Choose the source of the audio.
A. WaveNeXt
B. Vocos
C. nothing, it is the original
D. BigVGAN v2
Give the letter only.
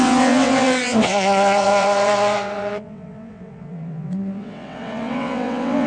A